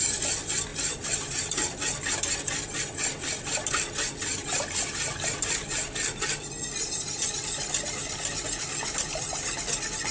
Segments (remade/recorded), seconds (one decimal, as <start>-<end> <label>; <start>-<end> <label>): 0.0-0.7 recorded; 0.7-2.2 remade; 2.2-10.1 recorded